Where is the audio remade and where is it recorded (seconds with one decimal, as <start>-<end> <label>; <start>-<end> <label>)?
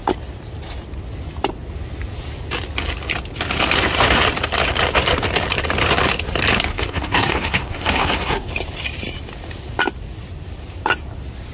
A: 0.0-6.7 recorded; 6.7-8.5 remade; 8.5-11.5 recorded